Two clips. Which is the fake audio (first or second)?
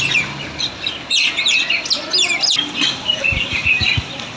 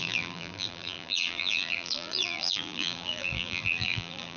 second